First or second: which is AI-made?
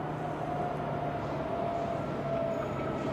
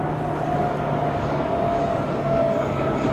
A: second